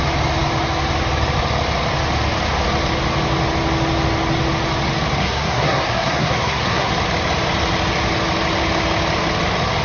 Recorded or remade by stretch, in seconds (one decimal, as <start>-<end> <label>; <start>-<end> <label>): 0.0-5.2 recorded; 5.2-6.9 remade; 6.9-9.8 recorded